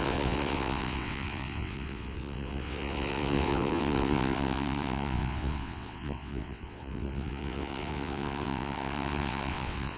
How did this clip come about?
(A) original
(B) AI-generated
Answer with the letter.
B